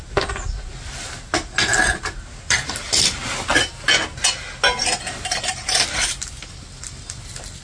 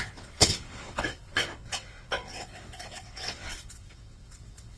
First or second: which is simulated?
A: second